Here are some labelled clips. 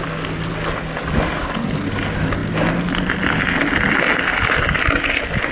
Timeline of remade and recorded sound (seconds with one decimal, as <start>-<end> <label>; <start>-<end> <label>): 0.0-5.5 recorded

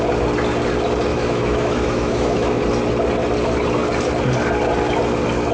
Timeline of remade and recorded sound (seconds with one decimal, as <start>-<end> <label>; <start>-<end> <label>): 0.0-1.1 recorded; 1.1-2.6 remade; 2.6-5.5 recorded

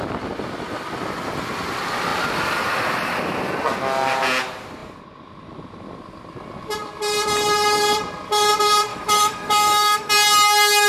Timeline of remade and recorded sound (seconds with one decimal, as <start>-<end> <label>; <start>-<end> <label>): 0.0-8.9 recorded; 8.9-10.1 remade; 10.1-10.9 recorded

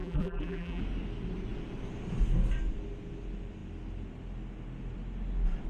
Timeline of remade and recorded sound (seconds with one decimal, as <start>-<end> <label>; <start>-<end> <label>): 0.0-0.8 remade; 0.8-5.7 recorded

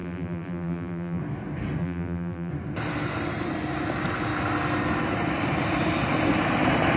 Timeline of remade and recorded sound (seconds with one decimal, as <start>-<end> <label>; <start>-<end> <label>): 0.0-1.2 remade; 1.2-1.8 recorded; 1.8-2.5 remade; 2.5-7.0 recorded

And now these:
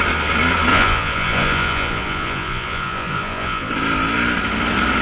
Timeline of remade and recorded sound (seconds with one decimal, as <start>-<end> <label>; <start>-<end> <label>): 0.0-0.7 recorded; 0.7-3.7 remade; 3.7-5.0 recorded